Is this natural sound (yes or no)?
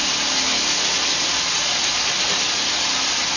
yes